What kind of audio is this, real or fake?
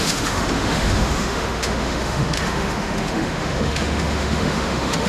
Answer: fake